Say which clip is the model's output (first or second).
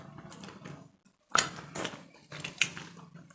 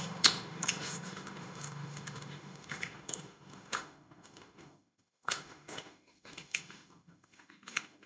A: second